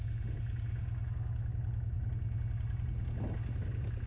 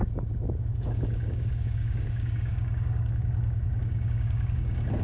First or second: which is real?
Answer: first